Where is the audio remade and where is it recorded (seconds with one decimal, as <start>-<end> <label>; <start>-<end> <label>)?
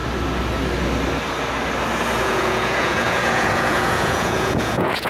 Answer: 0.0-2.2 recorded; 2.2-5.1 remade